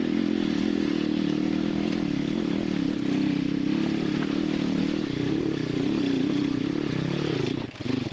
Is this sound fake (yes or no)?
no